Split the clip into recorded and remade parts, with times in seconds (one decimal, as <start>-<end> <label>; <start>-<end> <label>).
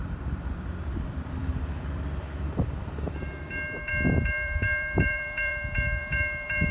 0.0-6.7 remade